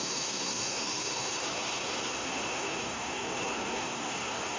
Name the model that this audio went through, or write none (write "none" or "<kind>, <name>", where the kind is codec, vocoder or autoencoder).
codec, SNAC